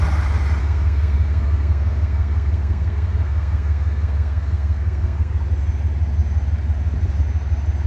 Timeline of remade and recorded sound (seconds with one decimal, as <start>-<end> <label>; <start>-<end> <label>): 0.0-0.6 recorded; 0.6-5.3 remade; 5.3-7.9 recorded